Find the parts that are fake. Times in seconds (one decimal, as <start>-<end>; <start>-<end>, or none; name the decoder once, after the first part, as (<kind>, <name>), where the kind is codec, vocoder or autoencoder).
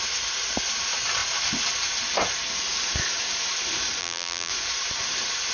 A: 4.0-4.5 (vocoder, BigVGAN v2)